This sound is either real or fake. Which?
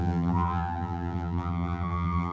fake